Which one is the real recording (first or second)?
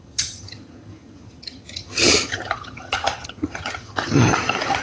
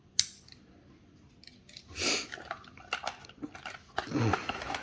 second